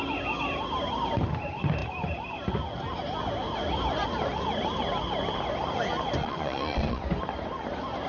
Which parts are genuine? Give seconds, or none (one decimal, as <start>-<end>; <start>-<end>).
0.0-6.2; 7.0-8.1